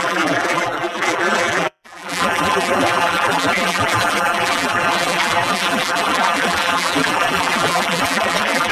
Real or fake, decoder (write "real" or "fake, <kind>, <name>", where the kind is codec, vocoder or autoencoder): fake, vocoder, BigVGAN v2